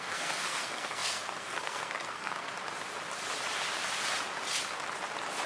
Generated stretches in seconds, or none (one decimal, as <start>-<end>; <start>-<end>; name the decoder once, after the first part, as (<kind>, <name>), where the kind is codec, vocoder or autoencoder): 0.0-2.5 (codec, SNAC)